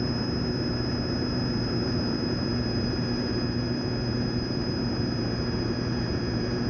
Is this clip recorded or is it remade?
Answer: remade